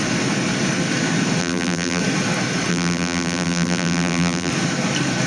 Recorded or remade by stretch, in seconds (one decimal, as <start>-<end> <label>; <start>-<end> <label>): 0.0-1.4 recorded; 1.4-2.0 remade; 2.0-2.7 recorded; 2.7-4.5 remade; 4.5-5.3 recorded